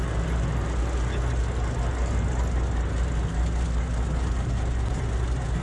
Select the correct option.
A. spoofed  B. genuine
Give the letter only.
B